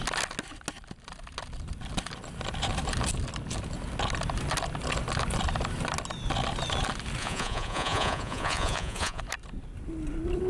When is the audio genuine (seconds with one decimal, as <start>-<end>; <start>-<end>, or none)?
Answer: 0.0-7.2; 9.2-10.5